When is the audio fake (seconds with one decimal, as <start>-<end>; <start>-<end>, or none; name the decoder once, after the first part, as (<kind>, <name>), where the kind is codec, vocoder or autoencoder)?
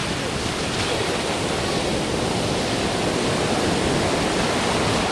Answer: none